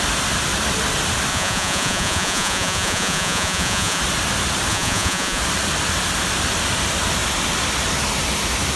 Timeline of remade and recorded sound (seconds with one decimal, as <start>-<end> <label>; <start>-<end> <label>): 0.0-1.3 recorded; 1.3-4.0 remade; 4.0-4.7 recorded; 4.7-5.4 remade; 5.4-8.8 recorded